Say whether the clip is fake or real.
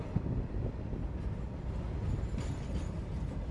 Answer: real